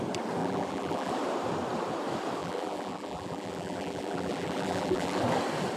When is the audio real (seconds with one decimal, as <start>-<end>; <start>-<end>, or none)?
0.0-0.4; 1.1-2.4; 5.2-5.8